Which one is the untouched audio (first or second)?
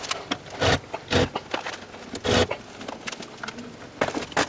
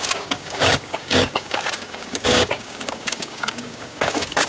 first